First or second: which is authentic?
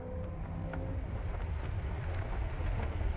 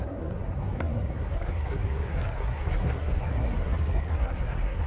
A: first